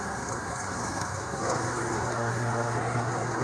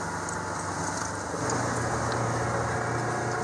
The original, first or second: second